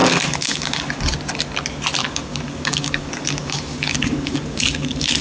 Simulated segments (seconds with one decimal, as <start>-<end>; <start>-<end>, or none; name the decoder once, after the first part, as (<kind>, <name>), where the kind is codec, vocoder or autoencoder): 0.0-1.0 (codec, DAC); 2.0-5.2